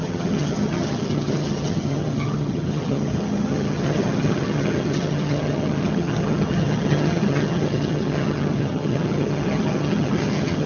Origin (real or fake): fake